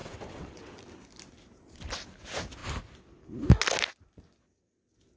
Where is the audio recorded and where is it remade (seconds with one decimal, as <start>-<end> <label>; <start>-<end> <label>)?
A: 0.0-0.7 remade; 0.7-5.2 recorded